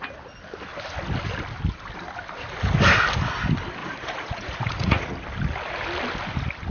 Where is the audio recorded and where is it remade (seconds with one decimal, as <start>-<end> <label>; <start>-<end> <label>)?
0.0-3.8 recorded; 3.8-5.1 remade; 5.1-6.7 recorded